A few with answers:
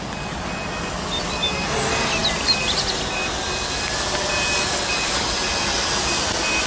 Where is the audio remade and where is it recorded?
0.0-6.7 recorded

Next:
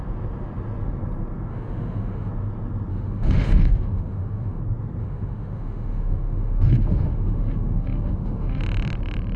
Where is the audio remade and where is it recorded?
0.0-1.5 recorded; 1.5-2.3 remade; 2.3-2.9 recorded; 2.9-4.6 remade; 4.6-5.0 recorded; 5.0-8.6 remade; 8.6-9.4 recorded

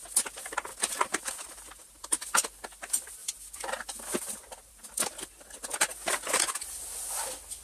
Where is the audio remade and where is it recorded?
0.0-7.6 recorded

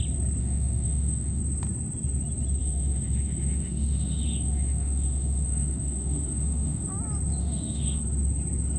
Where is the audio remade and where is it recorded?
0.0-0.4 recorded; 0.4-1.4 remade; 1.4-2.6 recorded; 2.6-6.9 remade; 6.9-7.4 recorded; 7.4-8.0 remade; 8.0-8.8 recorded

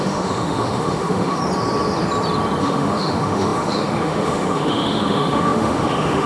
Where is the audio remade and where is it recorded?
0.0-1.4 remade; 1.4-2.6 recorded; 2.6-6.3 remade

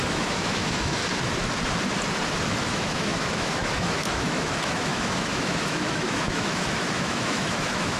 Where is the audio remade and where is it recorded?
0.0-1.0 remade; 1.0-2.6 recorded; 2.6-8.0 remade